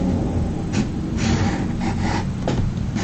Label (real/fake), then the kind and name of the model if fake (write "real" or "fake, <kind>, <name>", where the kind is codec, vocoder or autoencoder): real